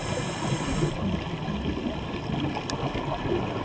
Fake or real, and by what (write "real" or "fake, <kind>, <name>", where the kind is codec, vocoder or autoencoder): real